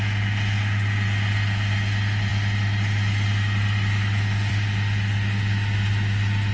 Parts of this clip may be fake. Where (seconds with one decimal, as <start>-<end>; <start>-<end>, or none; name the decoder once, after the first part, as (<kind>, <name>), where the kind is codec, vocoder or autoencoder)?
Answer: none